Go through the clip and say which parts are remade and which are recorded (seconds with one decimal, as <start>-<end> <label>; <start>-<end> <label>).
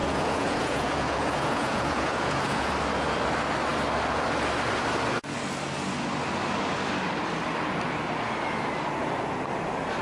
0.0-2.7 remade; 2.7-10.0 recorded